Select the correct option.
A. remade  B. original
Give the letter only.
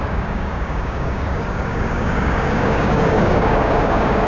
A